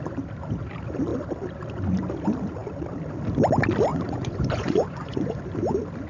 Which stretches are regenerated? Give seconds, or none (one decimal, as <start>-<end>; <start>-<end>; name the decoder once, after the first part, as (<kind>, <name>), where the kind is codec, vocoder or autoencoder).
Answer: 3.9-5.4 (vocoder, Vocos)